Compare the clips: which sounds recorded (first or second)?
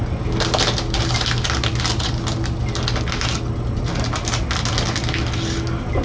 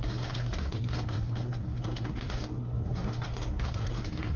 first